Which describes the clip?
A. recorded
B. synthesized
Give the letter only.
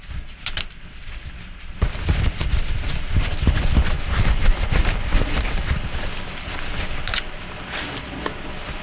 A